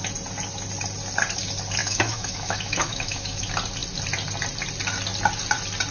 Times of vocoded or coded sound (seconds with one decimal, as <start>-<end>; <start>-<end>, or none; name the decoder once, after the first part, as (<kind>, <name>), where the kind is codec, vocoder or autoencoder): 1.8-3.4 (autoencoder, DAC-VAE)